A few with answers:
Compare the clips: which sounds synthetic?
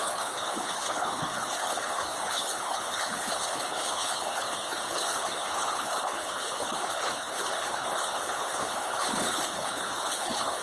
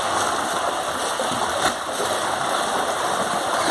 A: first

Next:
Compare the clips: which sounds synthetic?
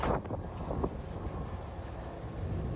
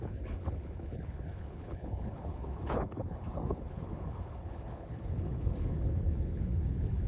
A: second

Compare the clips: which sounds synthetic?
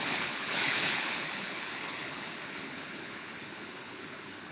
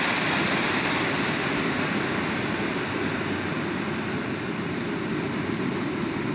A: first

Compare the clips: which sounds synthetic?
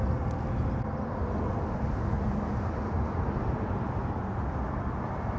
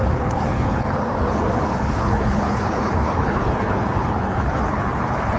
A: second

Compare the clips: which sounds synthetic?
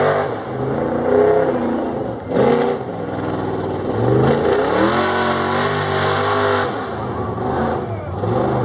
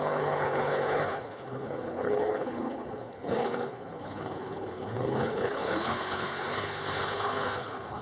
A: second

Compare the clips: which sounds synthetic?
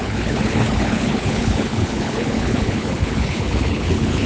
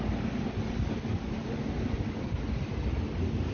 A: first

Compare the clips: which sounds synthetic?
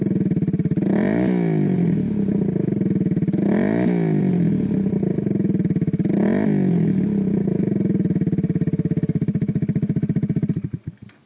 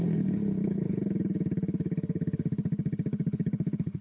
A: second